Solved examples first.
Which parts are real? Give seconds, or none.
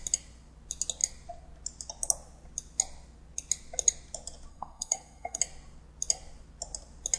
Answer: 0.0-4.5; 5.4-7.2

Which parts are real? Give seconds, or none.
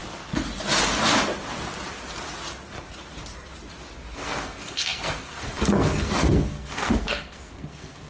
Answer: 0.0-4.1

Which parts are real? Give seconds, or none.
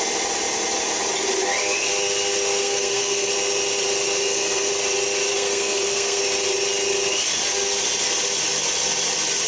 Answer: 0.0-2.6; 3.3-4.2; 4.7-5.3; 6.2-9.5